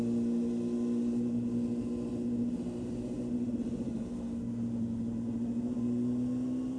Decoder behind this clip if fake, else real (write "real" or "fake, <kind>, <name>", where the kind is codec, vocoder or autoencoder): real